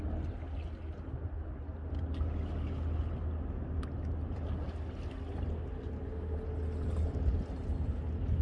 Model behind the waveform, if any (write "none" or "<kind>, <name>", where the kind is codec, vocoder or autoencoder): none